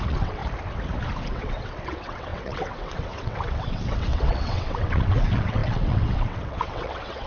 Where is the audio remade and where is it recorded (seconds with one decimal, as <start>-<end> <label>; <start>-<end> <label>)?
0.0-0.4 remade; 0.4-1.2 recorded; 1.2-7.3 remade